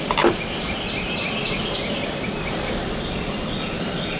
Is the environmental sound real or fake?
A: real